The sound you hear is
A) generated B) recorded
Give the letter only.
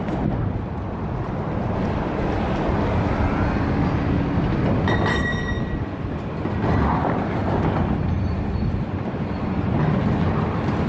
B